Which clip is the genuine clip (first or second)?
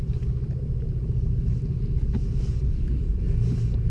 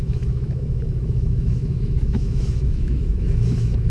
first